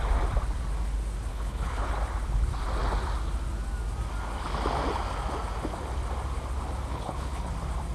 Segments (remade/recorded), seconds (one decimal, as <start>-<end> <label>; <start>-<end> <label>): 0.0-1.3 recorded; 1.3-1.9 remade; 1.9-6.9 recorded; 6.9-7.5 remade; 7.5-7.9 recorded